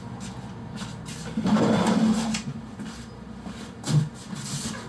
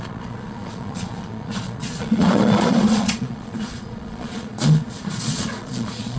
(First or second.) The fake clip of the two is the second